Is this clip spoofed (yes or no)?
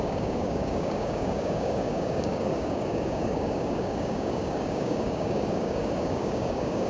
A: yes